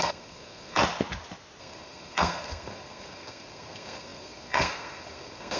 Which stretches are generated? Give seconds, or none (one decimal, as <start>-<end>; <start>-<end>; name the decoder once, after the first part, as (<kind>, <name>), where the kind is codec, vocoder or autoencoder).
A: 0.0-0.8 (codec, SNAC); 1.6-5.6